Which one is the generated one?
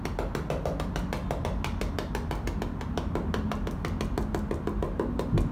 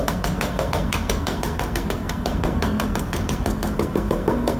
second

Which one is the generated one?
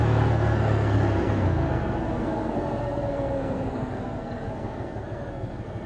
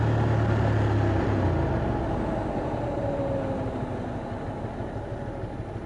first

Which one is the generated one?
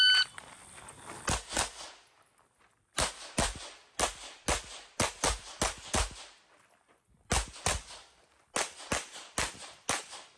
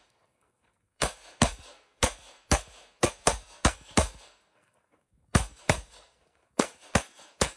second